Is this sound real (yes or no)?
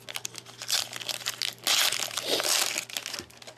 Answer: yes